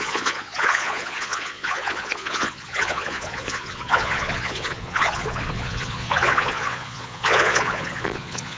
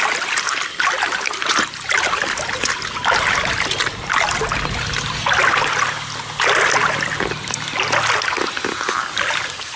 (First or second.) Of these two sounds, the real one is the second